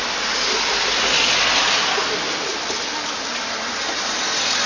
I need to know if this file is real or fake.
real